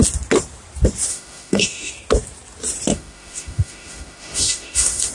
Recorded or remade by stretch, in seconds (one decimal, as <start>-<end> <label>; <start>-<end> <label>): 0.0-1.1 recorded; 1.1-1.9 remade; 1.9-2.9 recorded; 2.9-5.1 remade